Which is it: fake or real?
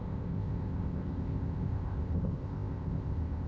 fake